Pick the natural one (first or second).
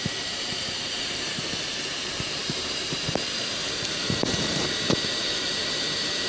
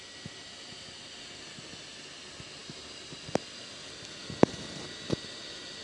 second